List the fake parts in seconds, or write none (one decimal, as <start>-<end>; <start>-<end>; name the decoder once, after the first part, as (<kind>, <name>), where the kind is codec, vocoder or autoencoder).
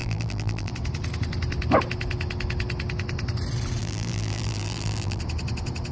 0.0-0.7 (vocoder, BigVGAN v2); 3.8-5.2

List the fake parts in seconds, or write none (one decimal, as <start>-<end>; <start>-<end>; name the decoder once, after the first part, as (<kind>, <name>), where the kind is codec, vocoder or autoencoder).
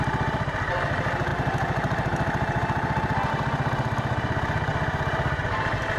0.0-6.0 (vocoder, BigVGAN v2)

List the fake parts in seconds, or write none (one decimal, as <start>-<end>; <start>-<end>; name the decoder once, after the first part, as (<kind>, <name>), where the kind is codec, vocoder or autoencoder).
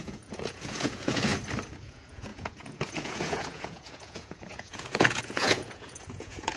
0.0-1.3 (vocoder, Vocos); 1.8-6.6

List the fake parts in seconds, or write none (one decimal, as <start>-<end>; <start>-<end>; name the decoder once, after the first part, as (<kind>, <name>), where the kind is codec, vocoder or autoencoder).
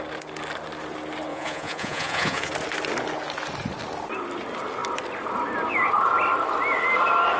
1.3-2.5 (vocoder, Vocos)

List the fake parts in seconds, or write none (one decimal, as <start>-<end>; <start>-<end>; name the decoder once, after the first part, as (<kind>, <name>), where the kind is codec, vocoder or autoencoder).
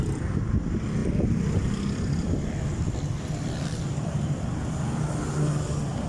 1.0-4.5 (vocoder, BigVGAN v2)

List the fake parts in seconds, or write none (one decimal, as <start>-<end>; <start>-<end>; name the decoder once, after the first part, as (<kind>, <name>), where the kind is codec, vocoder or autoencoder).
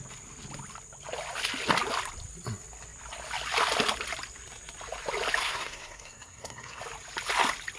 5.4-6.8 (codec, SNAC)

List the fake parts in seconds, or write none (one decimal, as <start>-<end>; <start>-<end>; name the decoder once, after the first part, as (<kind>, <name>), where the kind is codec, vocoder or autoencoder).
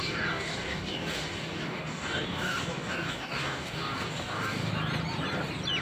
0.0-4.7 (codec, DAC)